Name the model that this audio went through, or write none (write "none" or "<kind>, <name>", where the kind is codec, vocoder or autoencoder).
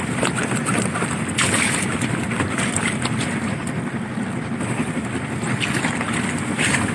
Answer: none